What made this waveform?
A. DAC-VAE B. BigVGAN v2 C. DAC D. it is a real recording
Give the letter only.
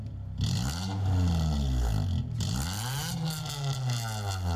D